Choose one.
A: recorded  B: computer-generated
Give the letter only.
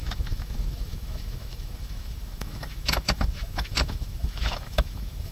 B